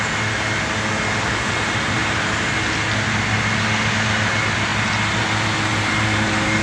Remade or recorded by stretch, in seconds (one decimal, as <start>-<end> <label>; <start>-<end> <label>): 0.0-2.0 recorded; 2.0-2.5 remade; 2.5-5.7 recorded; 5.7-6.6 remade